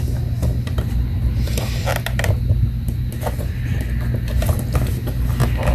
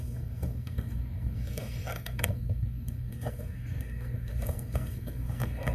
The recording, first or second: first